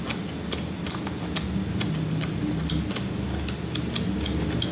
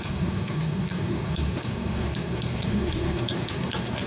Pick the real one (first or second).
first